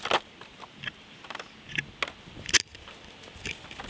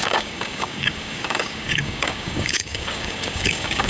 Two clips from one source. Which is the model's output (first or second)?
second